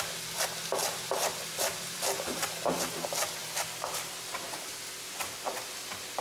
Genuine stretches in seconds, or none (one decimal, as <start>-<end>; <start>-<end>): 0.0-1.3; 2.4-3.4; 4.9-6.2